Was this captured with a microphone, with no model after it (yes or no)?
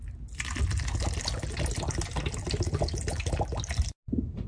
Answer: yes